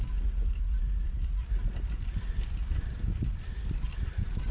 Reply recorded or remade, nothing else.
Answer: recorded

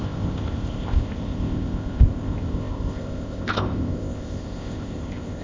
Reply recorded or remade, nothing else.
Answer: remade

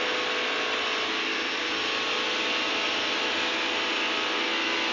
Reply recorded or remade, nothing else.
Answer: recorded